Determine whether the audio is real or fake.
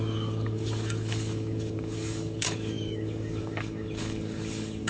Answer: fake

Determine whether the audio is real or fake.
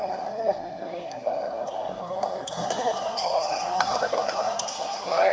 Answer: fake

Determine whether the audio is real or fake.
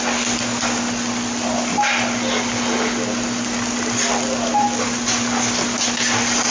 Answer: real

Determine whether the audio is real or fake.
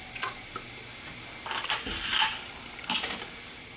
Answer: real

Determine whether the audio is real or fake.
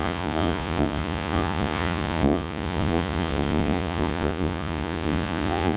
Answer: fake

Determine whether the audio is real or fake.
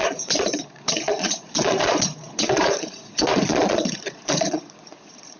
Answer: fake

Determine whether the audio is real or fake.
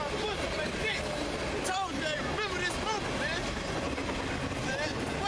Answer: real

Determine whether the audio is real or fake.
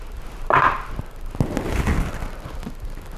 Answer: real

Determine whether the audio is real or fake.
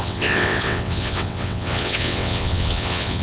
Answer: fake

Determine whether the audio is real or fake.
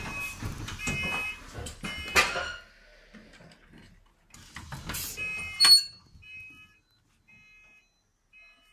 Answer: real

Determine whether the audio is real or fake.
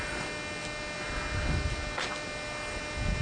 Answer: real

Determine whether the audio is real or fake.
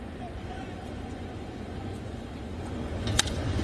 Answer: fake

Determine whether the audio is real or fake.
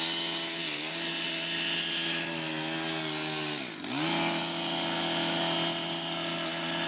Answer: real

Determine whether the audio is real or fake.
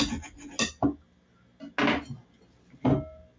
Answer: real